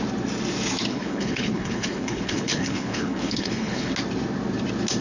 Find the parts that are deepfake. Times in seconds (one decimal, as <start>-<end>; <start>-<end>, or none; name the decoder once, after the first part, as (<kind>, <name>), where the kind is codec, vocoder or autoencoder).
0.9-3.9 (codec, HILCodec)